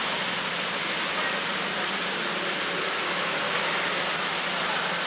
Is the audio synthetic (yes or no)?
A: no